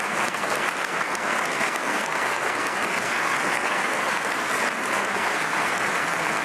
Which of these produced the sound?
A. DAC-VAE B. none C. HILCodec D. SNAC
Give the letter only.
D